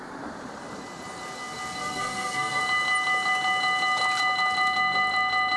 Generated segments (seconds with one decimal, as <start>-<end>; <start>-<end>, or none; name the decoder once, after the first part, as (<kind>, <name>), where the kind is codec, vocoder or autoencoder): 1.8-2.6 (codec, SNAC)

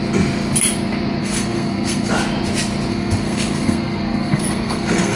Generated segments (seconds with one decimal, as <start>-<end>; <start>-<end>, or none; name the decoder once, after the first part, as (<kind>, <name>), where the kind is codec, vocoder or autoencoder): 1.2-2.1 (codec, SNAC); 2.9-5.2

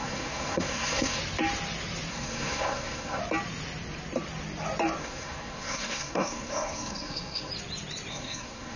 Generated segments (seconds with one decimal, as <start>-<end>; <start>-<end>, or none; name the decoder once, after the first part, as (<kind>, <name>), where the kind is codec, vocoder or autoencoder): 0.0-1.2 (codec, SNAC); 2.1-3.2; 5.0-7.5; 8.1-8.8

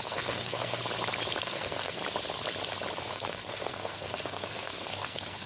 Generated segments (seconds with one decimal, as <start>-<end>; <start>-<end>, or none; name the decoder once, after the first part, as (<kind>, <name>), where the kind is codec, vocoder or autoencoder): 0.0-0.8 (codec, SNAC); 1.4-2.0; 3.0-5.5

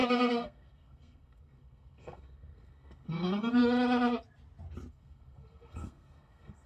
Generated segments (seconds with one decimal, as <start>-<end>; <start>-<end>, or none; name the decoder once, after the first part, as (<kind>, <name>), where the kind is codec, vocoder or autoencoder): 0.0-3.6 (codec, SNAC); 4.9-6.7

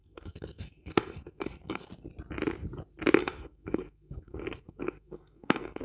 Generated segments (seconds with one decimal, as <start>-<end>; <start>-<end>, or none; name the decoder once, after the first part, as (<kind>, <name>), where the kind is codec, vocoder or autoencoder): 0.0-1.9 (codec, SNAC); 3.2-5.8

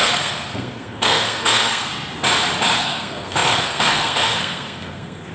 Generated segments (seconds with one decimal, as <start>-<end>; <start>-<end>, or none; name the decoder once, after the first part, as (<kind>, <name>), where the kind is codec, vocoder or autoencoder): 0.0-1.9 (codec, SNAC); 2.8-5.3